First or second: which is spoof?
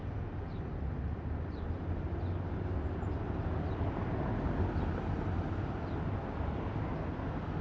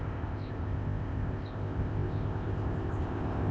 second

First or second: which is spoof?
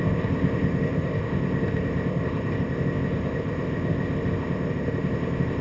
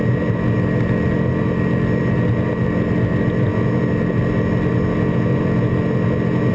first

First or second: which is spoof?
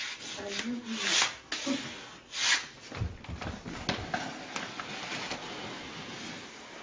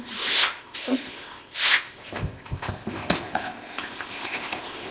second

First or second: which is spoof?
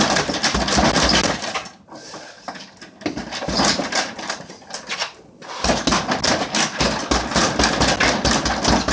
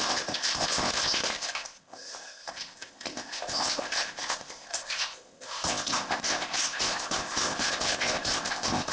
second